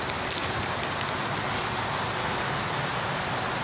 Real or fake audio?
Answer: real